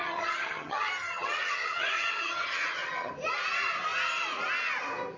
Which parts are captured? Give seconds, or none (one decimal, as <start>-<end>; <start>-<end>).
3.1-5.2